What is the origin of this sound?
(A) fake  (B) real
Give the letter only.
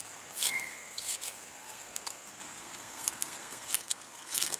A